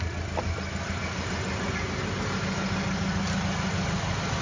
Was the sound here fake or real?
real